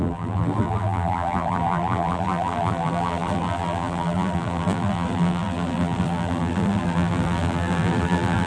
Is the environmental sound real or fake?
fake